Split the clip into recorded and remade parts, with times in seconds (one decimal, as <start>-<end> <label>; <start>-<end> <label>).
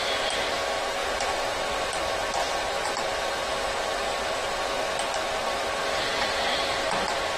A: 0.0-1.0 recorded; 1.0-2.1 remade; 2.1-7.4 recorded